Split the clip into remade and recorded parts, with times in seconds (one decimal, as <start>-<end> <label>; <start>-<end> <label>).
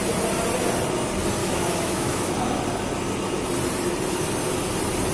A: 0.0-1.4 recorded; 1.4-2.3 remade; 2.3-5.1 recorded